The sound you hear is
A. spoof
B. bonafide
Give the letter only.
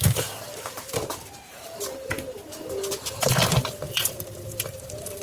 A